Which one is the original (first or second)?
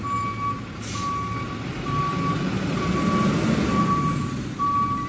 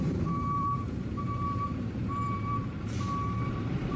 first